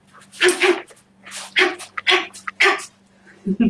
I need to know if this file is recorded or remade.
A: recorded